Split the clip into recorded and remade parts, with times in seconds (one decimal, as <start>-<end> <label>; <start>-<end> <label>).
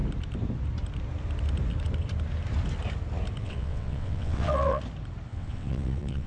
0.0-3.4 recorded; 3.4-4.8 remade; 4.8-5.3 recorded; 5.3-6.3 remade